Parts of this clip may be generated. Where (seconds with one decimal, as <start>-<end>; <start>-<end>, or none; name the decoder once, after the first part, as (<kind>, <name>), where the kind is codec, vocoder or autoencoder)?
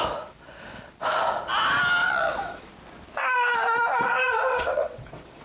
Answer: 2.0-2.7 (vocoder, WaveNeXt); 4.5-5.4